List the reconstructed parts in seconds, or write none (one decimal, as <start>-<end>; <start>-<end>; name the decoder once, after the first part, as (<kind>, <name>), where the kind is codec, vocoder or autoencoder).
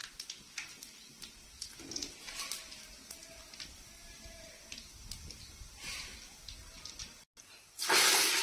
none